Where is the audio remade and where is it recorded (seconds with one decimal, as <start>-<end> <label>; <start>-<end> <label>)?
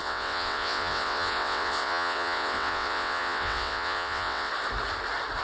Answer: 0.0-4.5 remade; 4.5-5.4 recorded